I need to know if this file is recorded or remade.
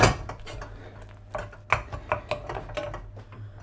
recorded